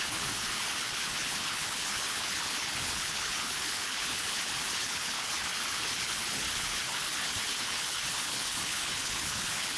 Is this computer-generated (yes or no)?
yes